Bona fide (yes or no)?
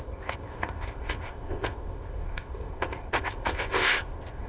no